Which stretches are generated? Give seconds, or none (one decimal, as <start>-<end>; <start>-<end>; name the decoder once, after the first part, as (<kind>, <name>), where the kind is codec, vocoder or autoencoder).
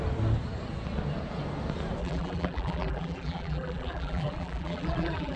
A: 2.0-5.4 (vocoder, BigVGAN v2)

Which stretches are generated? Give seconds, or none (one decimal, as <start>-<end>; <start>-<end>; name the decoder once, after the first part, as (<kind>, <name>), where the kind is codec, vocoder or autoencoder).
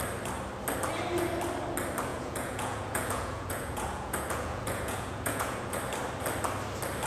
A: 2.1-5.8 (vocoder, Vocos)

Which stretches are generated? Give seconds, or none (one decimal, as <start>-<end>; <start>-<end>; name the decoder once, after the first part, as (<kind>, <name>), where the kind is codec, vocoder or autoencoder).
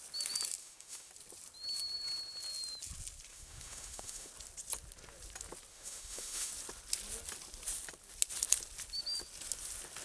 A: 0.6-1.1 (autoencoder, DAC-VAE); 3.3-4.3; 5.7-6.5